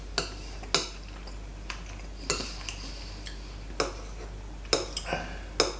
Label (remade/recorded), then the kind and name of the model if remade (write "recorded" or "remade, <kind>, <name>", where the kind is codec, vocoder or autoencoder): recorded